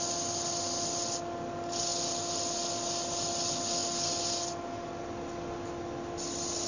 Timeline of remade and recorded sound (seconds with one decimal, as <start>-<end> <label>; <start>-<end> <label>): 0.0-6.7 recorded